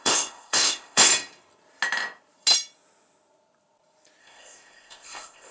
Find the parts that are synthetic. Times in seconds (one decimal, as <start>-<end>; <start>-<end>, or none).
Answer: 0.0-1.1; 4.2-5.5